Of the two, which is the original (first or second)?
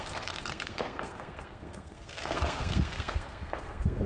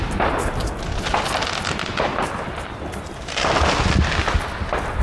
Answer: second